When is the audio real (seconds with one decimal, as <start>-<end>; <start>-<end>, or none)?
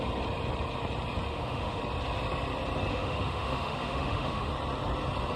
0.0-1.3; 1.8-2.9; 4.5-5.4